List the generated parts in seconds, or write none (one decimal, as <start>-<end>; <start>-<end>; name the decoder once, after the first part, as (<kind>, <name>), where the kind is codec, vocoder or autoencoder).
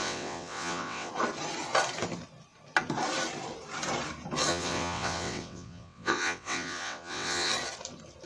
0.0-1.1 (vocoder, WaveNeXt); 4.5-7.5